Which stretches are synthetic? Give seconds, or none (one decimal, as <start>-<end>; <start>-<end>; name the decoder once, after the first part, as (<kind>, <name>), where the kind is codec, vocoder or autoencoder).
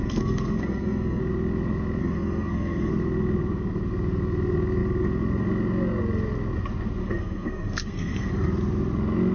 0.0-1.2 (codec, SNAC); 2.0-2.9; 7.0-8.3